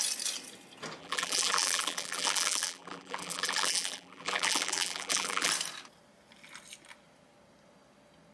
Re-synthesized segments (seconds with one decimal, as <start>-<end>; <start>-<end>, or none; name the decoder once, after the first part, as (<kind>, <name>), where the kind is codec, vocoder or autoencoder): 1.0-5.5 (vocoder, BigVGAN v2)

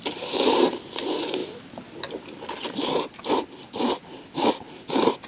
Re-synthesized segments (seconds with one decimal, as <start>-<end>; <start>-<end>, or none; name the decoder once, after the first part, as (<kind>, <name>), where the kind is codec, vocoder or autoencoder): 0.0-5.3 (vocoder, BigVGAN v2)